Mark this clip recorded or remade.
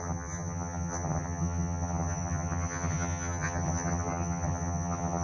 remade